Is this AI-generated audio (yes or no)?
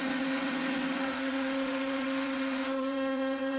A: yes